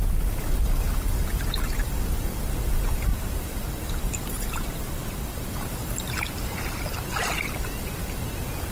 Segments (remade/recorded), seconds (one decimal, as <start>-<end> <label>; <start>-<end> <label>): 0.0-3.1 recorded; 3.1-5.5 remade; 5.5-8.7 recorded